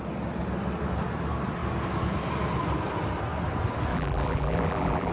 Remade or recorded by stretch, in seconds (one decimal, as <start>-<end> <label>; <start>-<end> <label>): 0.0-3.9 recorded; 3.9-5.1 remade